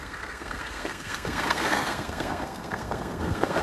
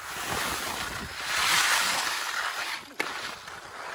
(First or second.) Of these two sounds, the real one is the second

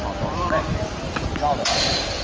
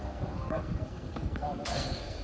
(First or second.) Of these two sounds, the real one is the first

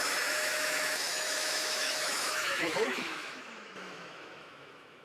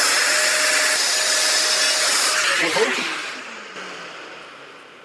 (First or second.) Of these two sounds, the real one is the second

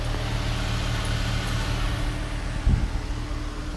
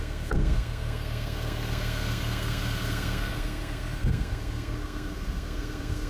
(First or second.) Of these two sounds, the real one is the first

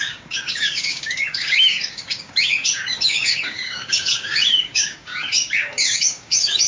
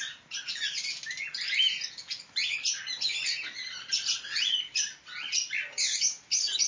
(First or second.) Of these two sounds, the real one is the second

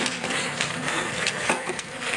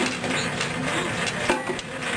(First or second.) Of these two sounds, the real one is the second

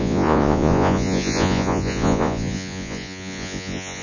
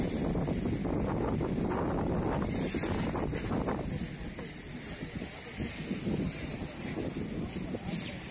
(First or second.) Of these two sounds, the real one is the second